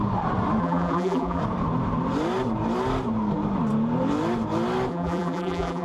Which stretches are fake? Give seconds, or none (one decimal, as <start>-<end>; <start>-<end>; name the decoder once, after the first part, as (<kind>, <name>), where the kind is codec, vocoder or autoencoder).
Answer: 0.6-1.4 (vocoder, BigVGAN v2); 4.9-5.8